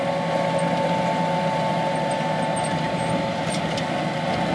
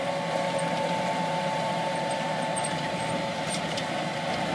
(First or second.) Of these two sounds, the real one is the first